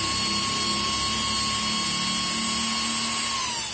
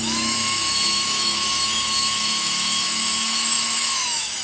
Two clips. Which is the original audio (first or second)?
first